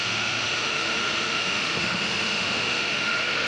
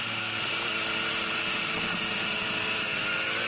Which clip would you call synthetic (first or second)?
first